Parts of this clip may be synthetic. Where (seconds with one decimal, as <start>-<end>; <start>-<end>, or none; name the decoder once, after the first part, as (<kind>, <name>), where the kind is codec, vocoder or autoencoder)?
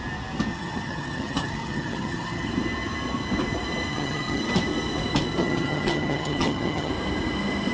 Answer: 0.5-2.5 (vocoder, HiFi-GAN); 3.9-4.4; 5.4-6.9